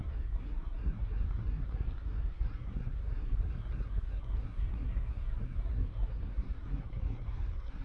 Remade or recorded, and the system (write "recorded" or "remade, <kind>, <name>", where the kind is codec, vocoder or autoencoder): remade, codec, SNAC